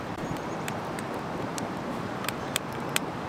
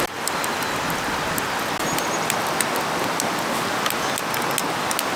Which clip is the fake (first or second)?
first